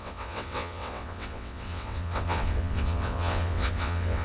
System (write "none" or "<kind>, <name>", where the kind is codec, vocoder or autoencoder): vocoder, WaveNeXt